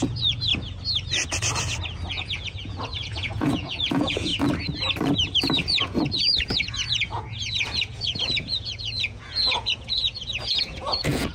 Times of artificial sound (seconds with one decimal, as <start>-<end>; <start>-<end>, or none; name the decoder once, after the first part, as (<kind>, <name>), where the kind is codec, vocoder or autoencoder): 0.0-0.5 (vocoder, Vocos); 2.1-4.3; 5.4-11.3